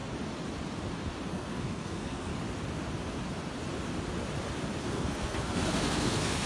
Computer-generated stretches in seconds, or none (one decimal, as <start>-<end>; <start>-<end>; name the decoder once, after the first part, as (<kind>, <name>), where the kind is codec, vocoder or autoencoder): 1.3-2.3 (codec, SNAC); 4.8-6.5